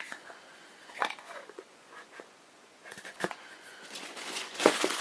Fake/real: fake